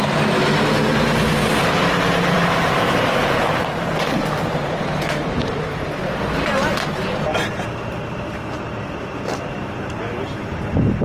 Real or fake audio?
fake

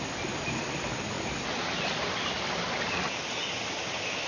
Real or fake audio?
real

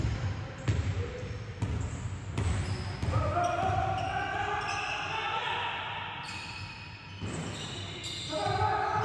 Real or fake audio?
real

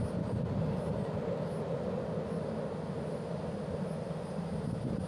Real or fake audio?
real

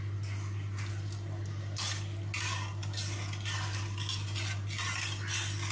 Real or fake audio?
real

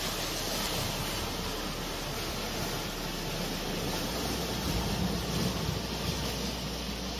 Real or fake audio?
real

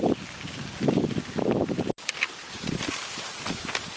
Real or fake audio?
real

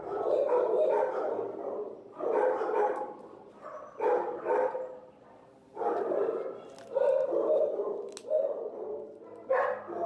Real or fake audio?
real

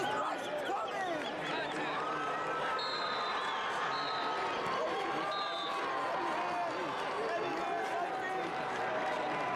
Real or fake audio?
real